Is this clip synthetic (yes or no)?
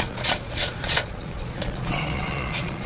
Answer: yes